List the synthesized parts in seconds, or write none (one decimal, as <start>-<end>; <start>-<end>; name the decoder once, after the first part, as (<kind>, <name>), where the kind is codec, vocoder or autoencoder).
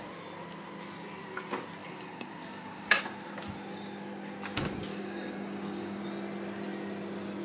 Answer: 1.8-3.0 (codec, DAC); 4.9-6.0